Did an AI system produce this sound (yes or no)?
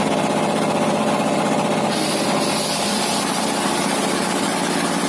no